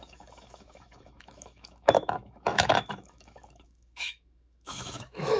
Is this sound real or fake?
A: fake